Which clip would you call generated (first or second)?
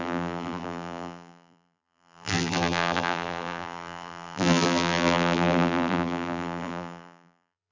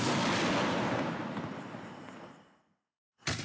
first